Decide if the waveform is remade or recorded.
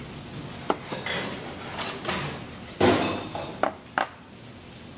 recorded